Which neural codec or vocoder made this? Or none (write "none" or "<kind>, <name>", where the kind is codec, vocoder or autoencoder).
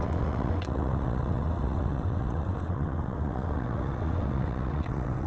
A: vocoder, WaveNeXt